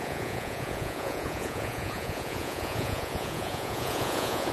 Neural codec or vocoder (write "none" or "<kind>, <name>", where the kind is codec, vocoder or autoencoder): vocoder, Vocos